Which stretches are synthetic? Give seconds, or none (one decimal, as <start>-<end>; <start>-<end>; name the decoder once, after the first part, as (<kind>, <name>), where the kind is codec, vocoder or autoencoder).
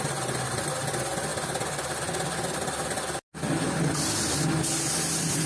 none